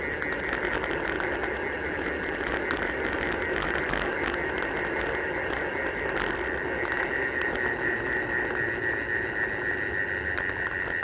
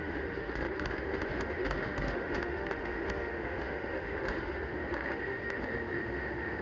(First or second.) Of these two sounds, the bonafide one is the first